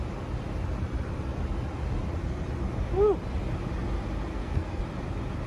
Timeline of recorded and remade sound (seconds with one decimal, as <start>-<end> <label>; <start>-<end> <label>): 0.0-4.3 recorded; 4.3-4.8 remade; 4.8-5.5 recorded